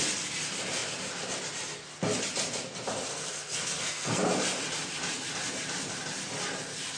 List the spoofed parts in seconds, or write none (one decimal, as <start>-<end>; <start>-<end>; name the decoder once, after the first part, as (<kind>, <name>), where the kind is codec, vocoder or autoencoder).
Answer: 3.1-4.2 (codec, SNAC)